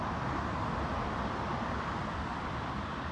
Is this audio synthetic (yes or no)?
no